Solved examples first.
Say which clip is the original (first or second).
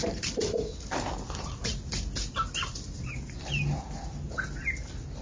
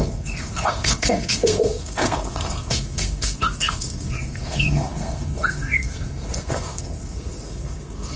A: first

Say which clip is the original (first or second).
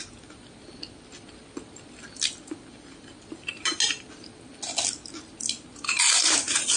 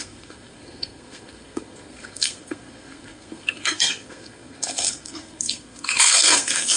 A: first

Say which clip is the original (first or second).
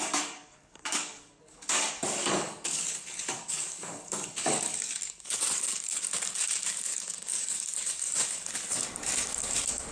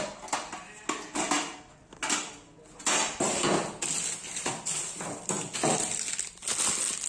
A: second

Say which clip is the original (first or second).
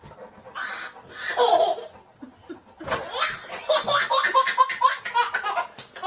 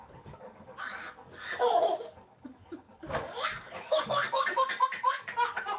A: first